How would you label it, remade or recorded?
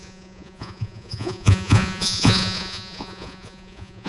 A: remade